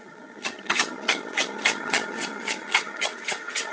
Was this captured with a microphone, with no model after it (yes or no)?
no